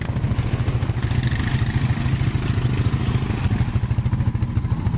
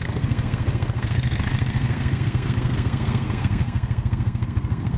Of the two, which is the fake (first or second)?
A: second